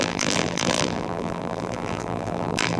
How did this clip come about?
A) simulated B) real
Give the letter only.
A